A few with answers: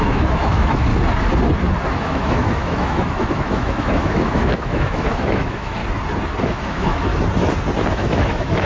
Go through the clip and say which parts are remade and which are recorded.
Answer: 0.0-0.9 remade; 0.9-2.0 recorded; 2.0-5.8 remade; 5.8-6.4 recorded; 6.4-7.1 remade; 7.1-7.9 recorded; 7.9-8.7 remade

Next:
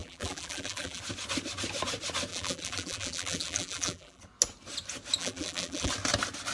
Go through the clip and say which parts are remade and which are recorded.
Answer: 0.0-1.0 remade; 1.0-2.3 recorded; 2.3-4.2 remade; 4.2-5.2 recorded; 5.2-5.9 remade; 5.9-6.5 recorded

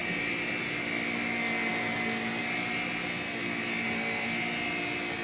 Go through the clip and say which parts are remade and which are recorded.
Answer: 0.0-5.2 recorded